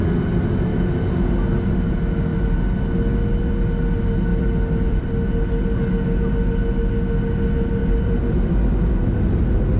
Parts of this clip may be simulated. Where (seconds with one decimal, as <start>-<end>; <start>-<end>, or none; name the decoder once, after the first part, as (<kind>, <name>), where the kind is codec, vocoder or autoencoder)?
4.3-5.1 (vocoder, BigVGAN v2); 7.8-8.5